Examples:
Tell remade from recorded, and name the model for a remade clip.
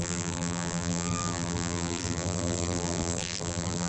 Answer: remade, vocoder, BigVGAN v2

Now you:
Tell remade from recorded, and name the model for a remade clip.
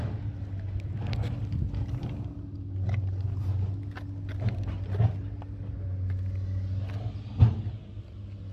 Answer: recorded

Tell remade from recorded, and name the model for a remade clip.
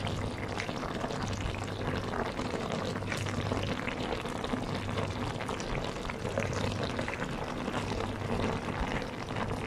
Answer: remade, vocoder, BigVGAN v2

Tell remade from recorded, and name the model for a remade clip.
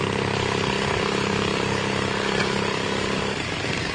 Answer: remade, codec, DAC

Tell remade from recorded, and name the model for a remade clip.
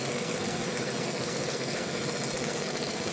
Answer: remade, codec, SNAC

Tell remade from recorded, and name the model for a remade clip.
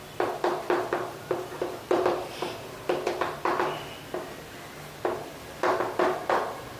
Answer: recorded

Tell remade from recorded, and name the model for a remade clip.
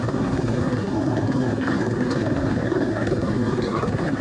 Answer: remade, codec, SNAC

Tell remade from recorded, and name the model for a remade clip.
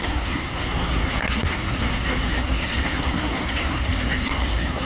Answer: remade, codec, SNAC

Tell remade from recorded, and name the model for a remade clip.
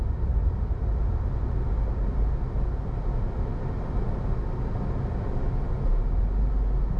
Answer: recorded